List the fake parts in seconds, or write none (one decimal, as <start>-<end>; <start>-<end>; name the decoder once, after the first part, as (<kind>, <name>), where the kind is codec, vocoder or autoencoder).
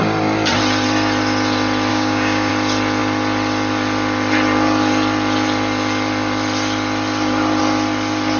1.9-2.5 (codec, DAC)